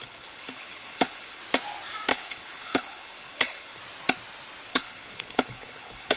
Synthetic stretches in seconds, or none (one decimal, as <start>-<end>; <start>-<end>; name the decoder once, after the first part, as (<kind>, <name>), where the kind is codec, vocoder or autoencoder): 0.0-1.4 (codec, HILCodec); 2.1-3.8; 4.7-6.2